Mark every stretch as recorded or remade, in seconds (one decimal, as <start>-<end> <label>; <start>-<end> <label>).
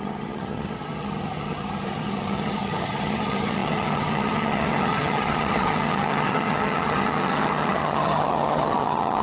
0.0-9.2 remade